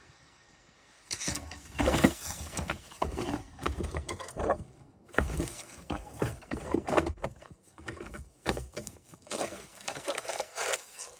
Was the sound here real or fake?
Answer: fake